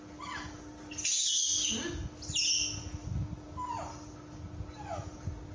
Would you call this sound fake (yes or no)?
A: no